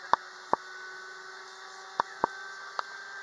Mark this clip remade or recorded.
recorded